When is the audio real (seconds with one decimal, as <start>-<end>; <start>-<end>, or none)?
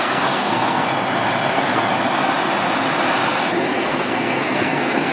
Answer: 0.9-1.5; 1.9-3.8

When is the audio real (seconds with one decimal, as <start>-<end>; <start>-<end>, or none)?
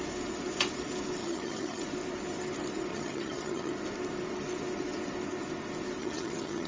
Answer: 0.0-1.2; 1.8-2.9; 3.7-6.0